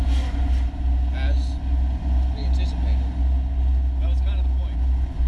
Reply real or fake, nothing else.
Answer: real